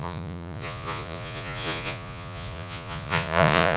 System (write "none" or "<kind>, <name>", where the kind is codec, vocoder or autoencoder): vocoder, Vocos